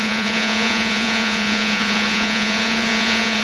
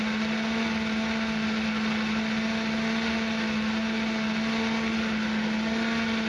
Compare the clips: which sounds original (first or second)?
second